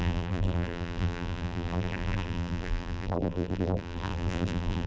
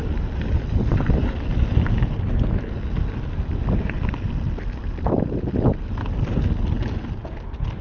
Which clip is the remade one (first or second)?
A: first